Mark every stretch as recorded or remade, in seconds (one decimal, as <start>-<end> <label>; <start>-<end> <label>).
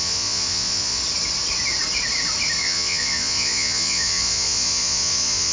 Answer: 0.0-1.0 remade; 1.0-2.6 recorded; 2.6-5.5 remade